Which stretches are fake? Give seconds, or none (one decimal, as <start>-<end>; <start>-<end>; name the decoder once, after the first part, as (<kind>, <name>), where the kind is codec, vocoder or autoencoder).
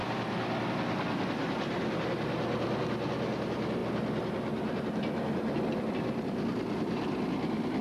none